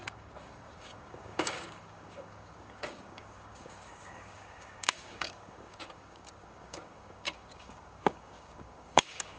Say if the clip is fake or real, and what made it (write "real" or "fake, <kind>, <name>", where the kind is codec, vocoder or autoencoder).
fake, codec, DAC